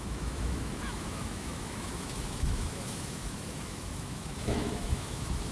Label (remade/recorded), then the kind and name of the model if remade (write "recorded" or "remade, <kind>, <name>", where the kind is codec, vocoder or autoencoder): remade, autoencoder, DAC-VAE